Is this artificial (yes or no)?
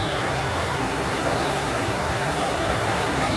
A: yes